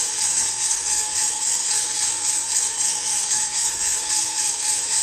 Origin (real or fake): fake